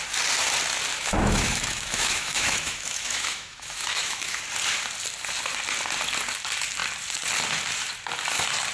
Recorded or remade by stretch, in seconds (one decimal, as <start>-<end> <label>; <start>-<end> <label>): 0.0-0.9 recorded; 0.9-4.4 remade; 4.4-8.7 recorded